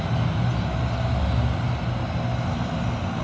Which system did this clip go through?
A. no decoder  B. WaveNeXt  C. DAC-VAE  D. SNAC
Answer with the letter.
A